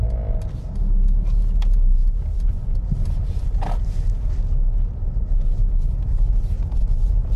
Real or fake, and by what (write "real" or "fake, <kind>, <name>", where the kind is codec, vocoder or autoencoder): real